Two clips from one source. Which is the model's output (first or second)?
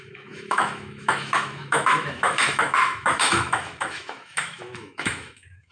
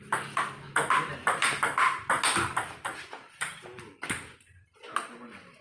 first